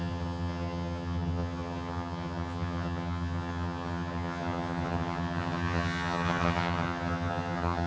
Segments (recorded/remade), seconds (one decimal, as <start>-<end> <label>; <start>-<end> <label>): 0.0-7.9 remade